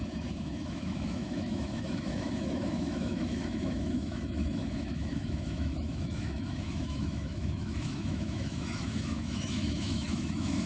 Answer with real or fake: fake